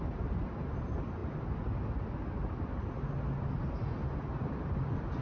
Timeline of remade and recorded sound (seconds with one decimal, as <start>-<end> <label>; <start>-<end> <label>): 0.0-5.2 recorded